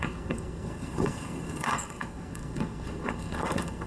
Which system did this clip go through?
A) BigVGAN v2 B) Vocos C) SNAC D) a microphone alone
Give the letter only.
C